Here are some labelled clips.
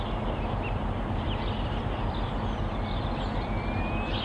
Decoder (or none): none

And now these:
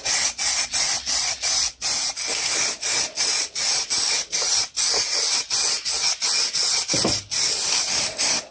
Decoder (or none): none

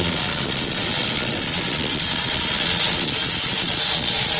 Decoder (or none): vocoder, Vocos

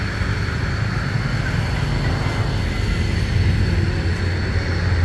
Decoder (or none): none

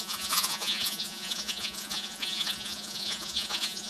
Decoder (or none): vocoder, Vocos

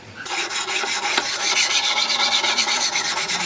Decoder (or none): vocoder, Vocos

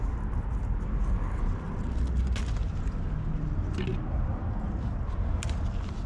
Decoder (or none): none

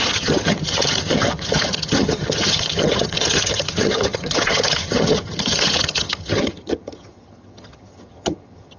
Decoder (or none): vocoder, HiFi-GAN